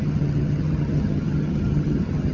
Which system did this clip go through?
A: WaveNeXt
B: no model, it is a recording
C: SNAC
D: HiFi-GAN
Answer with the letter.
D